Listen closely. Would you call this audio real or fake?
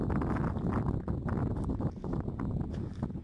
real